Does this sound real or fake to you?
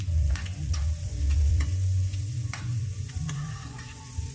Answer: fake